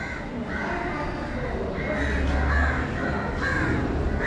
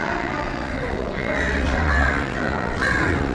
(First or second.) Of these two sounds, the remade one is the second